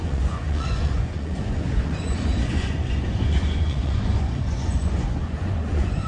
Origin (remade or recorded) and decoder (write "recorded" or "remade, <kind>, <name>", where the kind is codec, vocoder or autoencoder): remade, vocoder, Vocos